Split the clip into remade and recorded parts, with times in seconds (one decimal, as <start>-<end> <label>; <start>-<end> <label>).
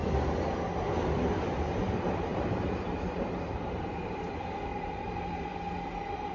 0.0-2.3 recorded; 2.3-4.3 remade; 4.3-4.7 recorded; 4.7-5.5 remade; 5.5-6.3 recorded